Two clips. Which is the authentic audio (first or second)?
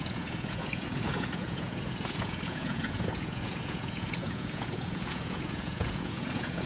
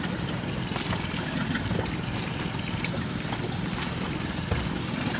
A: second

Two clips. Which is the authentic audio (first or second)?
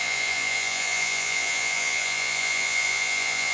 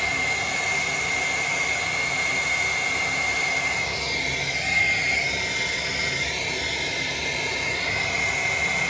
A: second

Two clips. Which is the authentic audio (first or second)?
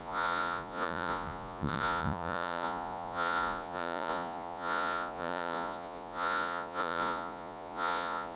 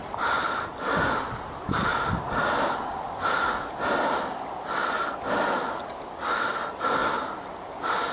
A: second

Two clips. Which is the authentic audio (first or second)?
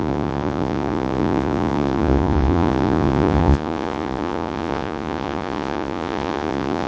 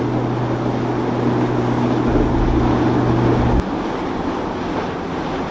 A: second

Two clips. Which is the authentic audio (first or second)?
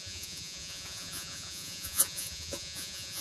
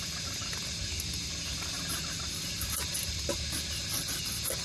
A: second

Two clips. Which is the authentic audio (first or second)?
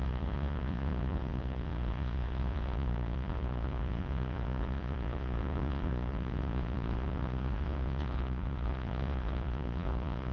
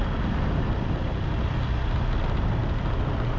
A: second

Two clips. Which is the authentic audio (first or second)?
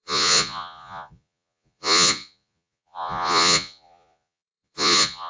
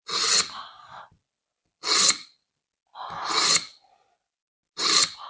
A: second